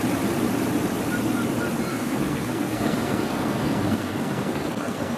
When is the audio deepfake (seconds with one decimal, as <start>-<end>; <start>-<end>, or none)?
1.9-5.2